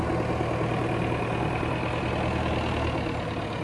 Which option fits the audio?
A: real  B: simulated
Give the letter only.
A